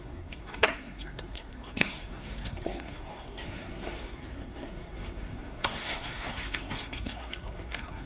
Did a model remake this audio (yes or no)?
yes